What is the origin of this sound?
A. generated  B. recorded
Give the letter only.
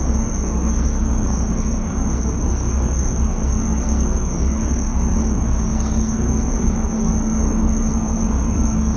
A